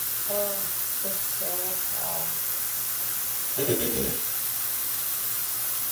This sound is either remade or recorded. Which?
recorded